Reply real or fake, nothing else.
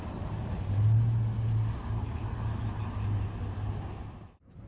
real